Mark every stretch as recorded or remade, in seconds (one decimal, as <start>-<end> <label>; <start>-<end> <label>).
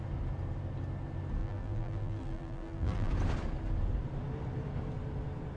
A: 0.0-1.4 recorded; 1.4-3.1 remade; 3.1-5.6 recorded